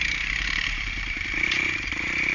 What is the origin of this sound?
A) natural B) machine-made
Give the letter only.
B